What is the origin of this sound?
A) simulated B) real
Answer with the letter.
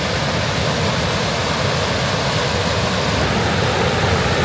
B